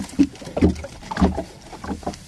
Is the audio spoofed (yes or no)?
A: no